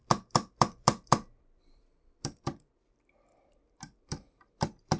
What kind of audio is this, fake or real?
fake